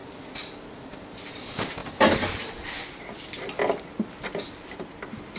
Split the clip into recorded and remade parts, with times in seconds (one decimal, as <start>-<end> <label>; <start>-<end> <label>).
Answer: 0.0-5.4 recorded